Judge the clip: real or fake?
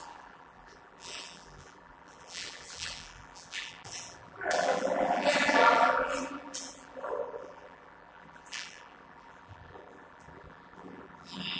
fake